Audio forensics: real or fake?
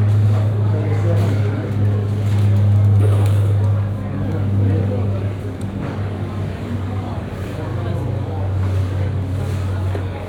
fake